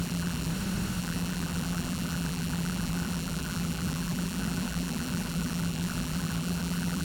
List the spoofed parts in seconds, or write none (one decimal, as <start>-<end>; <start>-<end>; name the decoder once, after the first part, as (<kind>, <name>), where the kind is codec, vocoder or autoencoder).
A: 0.0-0.5 (vocoder, BigVGAN v2); 1.0-7.0